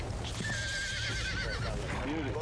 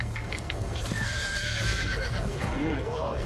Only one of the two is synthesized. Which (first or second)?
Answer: second